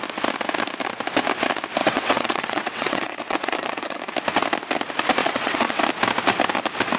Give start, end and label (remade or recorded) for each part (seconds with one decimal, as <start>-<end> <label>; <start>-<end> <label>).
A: 0.0-1.8 recorded; 1.8-4.0 remade; 4.0-5.2 recorded; 5.2-5.8 remade; 5.8-7.0 recorded